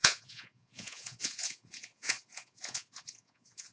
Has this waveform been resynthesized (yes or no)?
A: yes